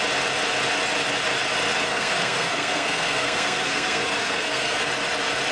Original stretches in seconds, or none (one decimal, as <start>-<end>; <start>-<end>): 0.0-1.9; 4.9-5.5